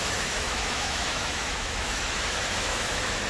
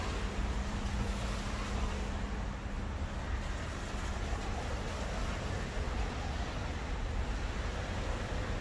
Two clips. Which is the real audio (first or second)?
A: second